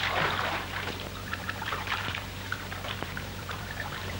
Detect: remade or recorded remade